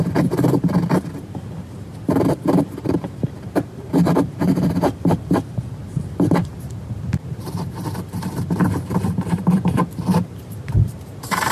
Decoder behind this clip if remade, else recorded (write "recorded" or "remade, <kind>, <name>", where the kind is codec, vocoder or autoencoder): remade, vocoder, BigVGAN v2